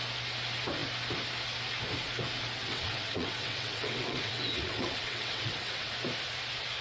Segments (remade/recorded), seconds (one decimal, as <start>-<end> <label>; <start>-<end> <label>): 0.0-2.6 recorded; 2.6-5.9 remade; 5.9-6.8 recorded